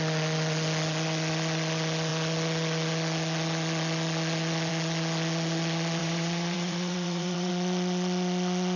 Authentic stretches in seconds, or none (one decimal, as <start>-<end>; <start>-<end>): 0.0-6.0; 7.5-8.8